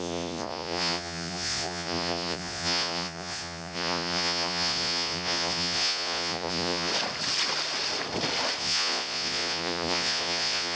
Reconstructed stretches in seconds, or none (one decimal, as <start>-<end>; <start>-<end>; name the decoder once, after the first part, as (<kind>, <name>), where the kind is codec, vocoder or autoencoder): 0.0-6.9 (vocoder, Vocos); 8.6-10.8